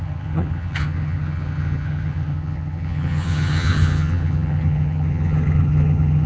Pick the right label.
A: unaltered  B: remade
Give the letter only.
B